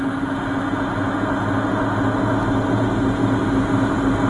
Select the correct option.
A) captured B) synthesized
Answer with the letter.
A